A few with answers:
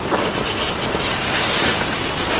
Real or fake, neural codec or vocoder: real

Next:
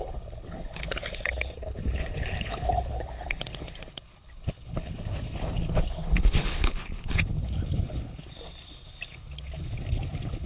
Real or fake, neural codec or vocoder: fake, codec, HILCodec